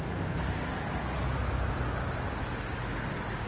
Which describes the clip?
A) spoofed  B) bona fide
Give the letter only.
B